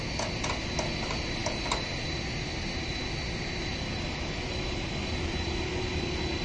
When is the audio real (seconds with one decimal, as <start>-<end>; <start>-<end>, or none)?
0.0-6.4